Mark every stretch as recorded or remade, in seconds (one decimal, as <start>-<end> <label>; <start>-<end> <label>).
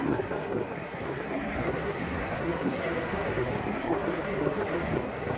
0.0-5.4 remade